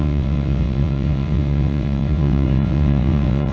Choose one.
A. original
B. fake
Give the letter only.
B